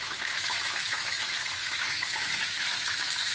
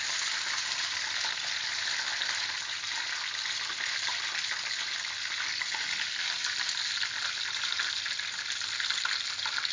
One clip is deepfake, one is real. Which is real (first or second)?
second